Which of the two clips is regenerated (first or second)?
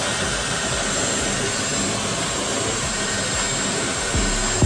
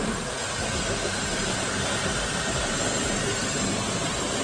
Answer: second